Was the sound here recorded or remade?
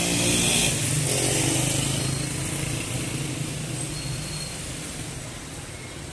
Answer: recorded